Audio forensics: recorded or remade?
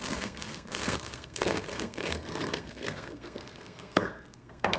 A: remade